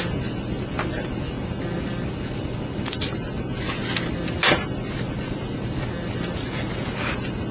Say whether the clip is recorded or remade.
recorded